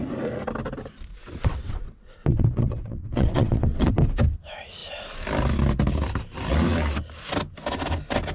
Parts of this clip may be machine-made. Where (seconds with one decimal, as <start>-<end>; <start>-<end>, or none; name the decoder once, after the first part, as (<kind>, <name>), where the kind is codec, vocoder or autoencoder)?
1.1-3.9 (vocoder, WaveNeXt)

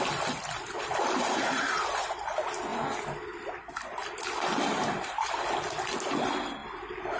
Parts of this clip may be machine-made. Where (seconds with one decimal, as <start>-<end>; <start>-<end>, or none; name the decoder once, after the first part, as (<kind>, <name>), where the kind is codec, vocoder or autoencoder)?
none

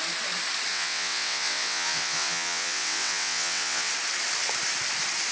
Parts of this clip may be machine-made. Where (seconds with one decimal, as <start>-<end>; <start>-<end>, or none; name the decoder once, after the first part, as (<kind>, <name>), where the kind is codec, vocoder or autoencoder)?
0.7-3.9 (vocoder, WaveNeXt)

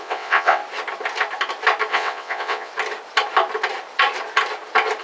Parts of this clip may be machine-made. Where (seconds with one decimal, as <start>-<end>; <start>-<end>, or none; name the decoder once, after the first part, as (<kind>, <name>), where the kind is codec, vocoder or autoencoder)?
0.0-0.6 (vocoder, WaveNeXt); 1.9-2.7

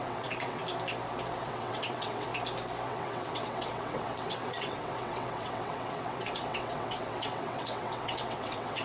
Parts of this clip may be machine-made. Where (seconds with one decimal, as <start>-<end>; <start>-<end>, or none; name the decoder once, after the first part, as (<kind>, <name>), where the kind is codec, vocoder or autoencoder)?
0.0-0.6 (vocoder, WaveNeXt); 1.4-2.3; 2.9-8.8

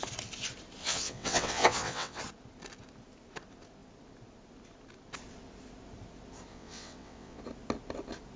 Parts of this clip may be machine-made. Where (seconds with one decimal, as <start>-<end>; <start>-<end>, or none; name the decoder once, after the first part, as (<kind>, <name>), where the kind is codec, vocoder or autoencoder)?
0.8-2.2 (vocoder, WaveNeXt); 6.5-7.4